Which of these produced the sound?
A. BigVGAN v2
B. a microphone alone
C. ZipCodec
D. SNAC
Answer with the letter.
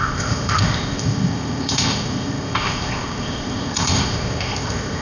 C